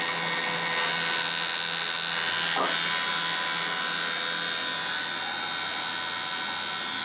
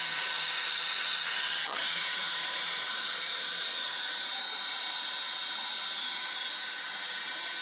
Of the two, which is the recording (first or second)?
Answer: first